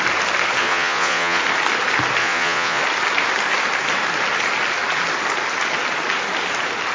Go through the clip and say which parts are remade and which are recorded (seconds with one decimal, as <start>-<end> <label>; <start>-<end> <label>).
0.0-0.6 recorded; 0.6-1.4 remade; 1.4-2.2 recorded; 2.2-2.8 remade; 2.8-6.9 recorded